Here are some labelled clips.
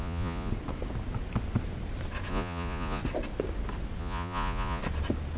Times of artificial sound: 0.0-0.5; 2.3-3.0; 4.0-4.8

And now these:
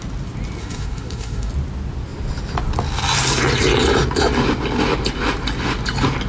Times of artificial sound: 0.6-1.5

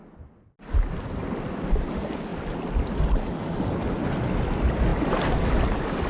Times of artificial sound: none

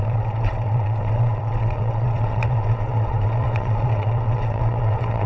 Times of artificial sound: 0.0-5.3

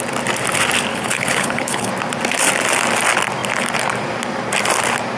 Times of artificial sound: 0.9-1.9

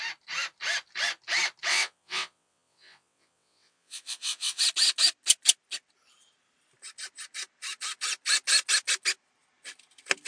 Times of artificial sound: 1.7-4.6

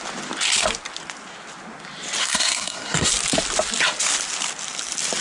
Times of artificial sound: 2.2-3.1

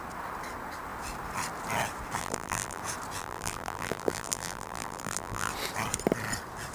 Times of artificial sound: 2.2-2.8; 3.2-5.5